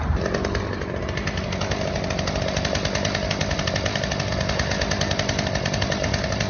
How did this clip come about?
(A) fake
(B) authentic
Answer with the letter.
B